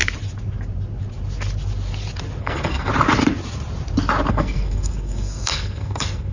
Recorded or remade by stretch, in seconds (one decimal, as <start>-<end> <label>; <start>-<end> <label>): 0.0-2.4 recorded; 2.4-2.9 remade; 2.9-4.3 recorded; 4.3-6.3 remade